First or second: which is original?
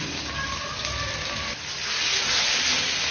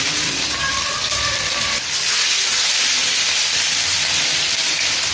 first